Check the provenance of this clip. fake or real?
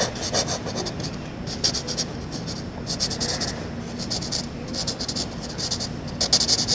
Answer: real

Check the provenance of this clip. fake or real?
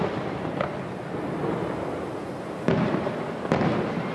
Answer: real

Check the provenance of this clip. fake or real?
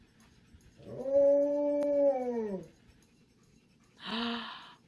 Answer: real